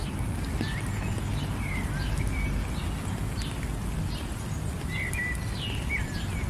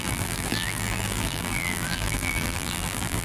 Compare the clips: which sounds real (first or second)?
first